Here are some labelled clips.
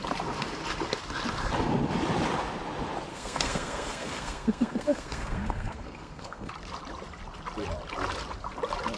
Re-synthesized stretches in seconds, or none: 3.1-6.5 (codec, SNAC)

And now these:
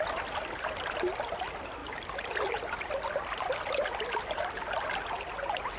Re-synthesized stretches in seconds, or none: none

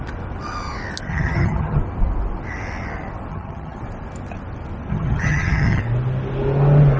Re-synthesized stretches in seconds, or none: 1.1-1.8 (vocoder, HiFi-GAN); 3.3-3.8; 4.9-5.8

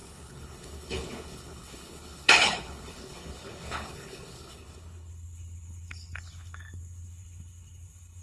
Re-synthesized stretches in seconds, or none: 0.0-8.2 (codec, HILCodec)

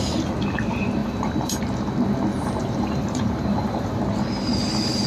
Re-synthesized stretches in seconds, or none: 1.0-1.6 (vocoder, BigVGAN v2); 2.3-4.0

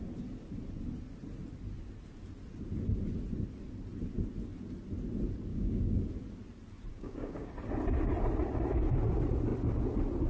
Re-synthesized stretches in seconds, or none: 5.5-6.0 (codec, DAC); 6.9-7.5